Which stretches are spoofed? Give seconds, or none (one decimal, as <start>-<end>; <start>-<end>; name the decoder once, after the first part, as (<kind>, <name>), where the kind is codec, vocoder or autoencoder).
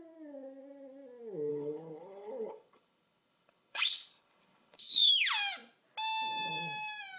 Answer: 1.5-5.1 (codec, HILCodec)